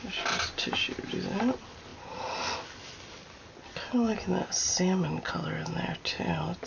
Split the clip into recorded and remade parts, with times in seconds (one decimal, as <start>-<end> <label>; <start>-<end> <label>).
0.0-6.7 recorded